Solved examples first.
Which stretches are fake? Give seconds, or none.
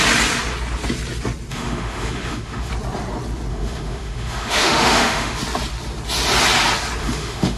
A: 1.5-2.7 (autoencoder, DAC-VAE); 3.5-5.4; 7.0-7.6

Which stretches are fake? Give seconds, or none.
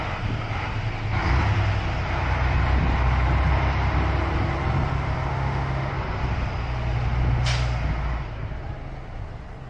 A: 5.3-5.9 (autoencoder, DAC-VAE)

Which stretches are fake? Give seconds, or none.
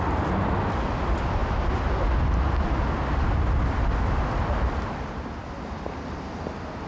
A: none